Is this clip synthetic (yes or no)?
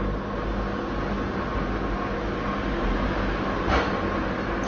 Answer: no